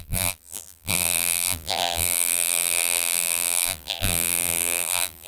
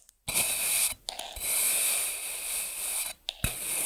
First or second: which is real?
second